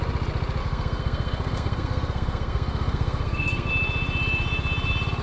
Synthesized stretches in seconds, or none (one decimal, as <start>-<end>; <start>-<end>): 0.6-3.7